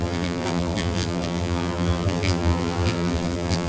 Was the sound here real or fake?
fake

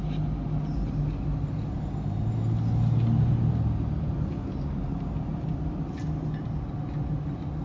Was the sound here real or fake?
real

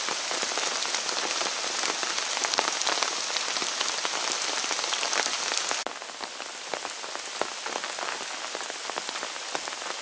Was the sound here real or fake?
real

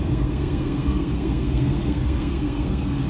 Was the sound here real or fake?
fake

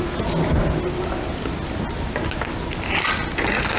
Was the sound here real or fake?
real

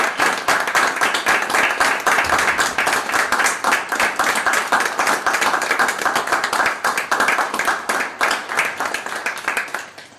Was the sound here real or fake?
real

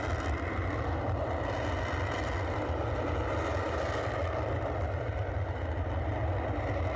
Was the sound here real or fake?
real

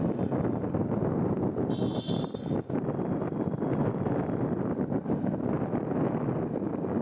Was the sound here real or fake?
real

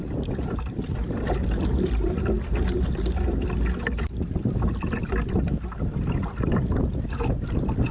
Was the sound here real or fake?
real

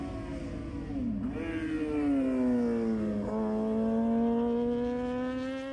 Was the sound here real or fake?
real